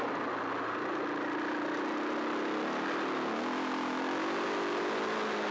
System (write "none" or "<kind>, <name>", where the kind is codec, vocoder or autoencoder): none